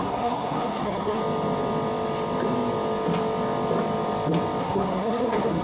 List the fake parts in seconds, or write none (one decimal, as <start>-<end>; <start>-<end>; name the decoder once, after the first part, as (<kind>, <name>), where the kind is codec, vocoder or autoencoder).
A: 0.0-1.2 (codec, SNAC); 4.6-5.6